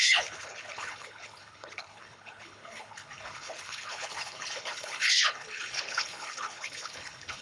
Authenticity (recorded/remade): remade